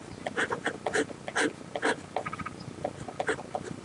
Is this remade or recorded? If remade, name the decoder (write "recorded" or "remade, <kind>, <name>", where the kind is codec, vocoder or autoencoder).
recorded